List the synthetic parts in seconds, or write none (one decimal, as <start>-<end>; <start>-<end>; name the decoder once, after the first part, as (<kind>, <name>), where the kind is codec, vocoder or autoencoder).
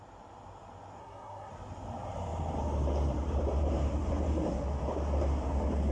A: 1.0-1.5 (codec, SNAC)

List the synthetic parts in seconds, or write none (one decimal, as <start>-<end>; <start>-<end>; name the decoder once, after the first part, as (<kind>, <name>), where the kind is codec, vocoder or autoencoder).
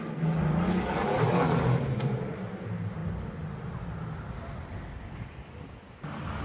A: none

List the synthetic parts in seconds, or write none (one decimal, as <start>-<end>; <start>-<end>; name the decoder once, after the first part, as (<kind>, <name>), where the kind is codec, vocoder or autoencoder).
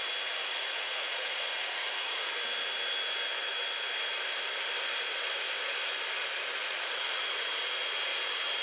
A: 0.4-2.3 (vocoder, Vocos); 6.6-7.5